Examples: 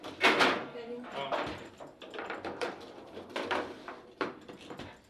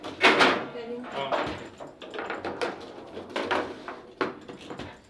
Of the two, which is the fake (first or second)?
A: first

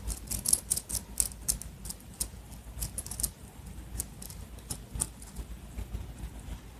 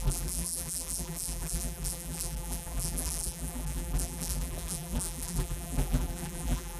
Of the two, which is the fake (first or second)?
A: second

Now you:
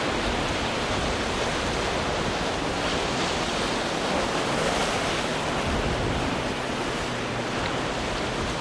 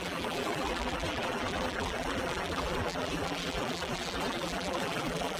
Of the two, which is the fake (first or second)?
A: second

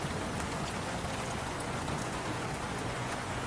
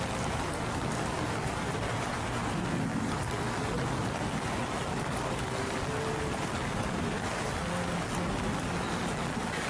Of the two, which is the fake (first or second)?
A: first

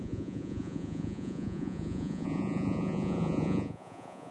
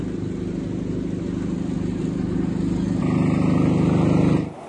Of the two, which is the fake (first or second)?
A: first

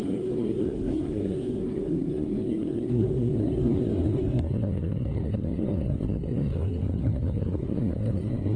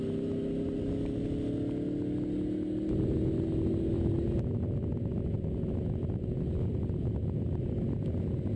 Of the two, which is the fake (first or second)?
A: first